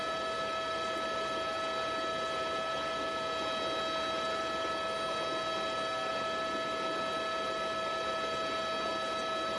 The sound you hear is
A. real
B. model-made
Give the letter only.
A